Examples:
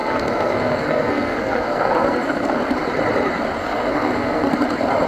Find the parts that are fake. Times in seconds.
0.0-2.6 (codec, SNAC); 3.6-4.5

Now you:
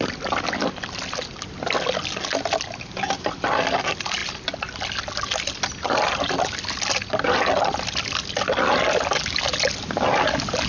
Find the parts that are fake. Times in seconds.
none